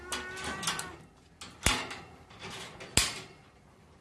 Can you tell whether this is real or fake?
real